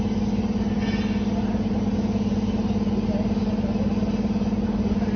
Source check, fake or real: real